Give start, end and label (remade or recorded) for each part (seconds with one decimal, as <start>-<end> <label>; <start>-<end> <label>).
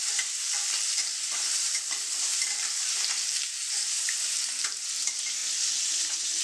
0.0-5.4 remade; 5.4-6.0 recorded; 6.0-6.4 remade